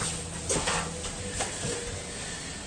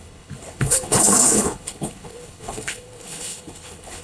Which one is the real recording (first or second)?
first